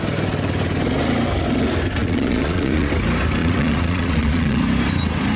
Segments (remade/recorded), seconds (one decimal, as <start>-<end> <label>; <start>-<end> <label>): 0.0-2.0 recorded; 2.0-2.9 remade; 2.9-3.4 recorded; 3.4-4.6 remade; 4.6-5.4 recorded